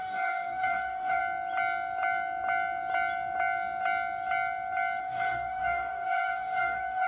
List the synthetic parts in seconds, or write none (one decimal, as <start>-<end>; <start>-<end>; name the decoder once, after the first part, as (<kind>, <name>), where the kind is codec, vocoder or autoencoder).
0.0-1.2 (codec, DAC); 5.0-7.1